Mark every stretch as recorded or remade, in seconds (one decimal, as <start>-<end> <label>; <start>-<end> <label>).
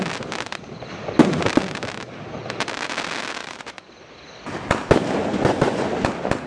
0.0-3.4 recorded; 3.4-3.9 remade; 3.9-5.2 recorded; 5.2-5.9 remade; 5.9-6.5 recorded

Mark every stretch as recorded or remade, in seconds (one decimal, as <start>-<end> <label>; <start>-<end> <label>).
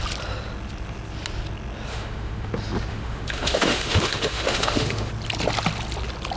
0.0-1.9 recorded; 1.9-2.5 remade; 2.5-2.9 recorded; 2.9-5.1 remade; 5.1-6.4 recorded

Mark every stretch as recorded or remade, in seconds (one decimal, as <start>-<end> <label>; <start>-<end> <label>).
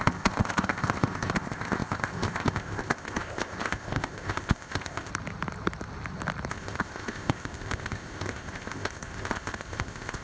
0.0-5.1 remade; 5.1-6.5 recorded; 6.5-10.2 remade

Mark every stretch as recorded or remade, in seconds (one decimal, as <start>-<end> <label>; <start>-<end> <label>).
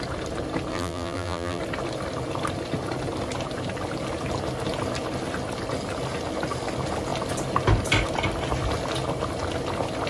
0.0-0.7 recorded; 0.7-1.6 remade; 1.6-10.1 recorded